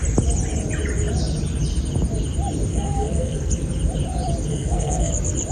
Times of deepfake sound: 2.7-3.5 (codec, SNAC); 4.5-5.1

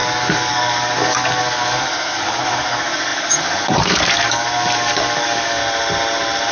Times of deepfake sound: 0.0-5.6 (codec, DAC)